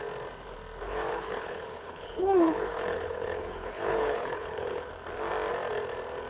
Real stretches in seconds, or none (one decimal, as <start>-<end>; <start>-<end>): 0.0-1.1; 4.9-6.3